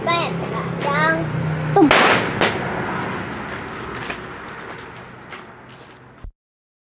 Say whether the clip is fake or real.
real